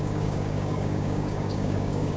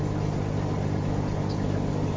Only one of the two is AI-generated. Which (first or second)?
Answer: first